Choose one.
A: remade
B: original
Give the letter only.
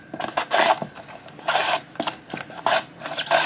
B